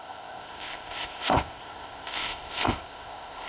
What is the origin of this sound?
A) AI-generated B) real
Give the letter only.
A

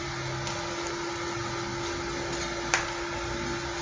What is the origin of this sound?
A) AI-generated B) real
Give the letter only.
B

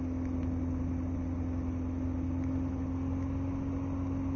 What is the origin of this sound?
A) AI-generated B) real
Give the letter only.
B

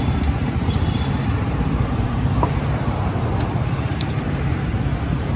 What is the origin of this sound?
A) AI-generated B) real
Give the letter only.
A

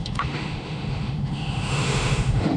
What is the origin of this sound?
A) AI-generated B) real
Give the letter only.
A